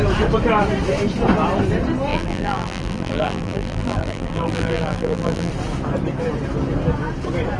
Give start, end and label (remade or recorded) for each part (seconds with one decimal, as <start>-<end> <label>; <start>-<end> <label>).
0.0-2.1 recorded; 2.1-5.5 remade; 5.5-7.6 recorded